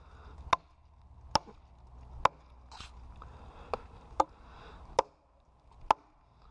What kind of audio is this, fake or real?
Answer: real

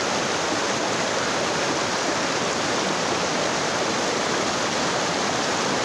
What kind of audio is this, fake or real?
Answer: fake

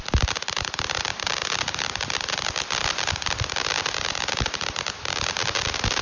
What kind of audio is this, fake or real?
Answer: real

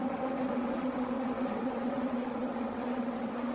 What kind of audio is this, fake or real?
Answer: fake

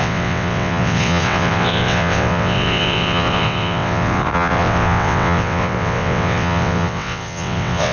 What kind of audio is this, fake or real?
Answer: fake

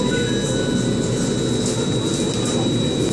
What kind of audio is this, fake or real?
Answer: real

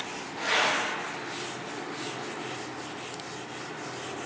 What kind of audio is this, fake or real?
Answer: real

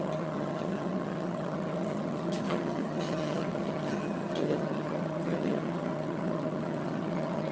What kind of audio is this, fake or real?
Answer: fake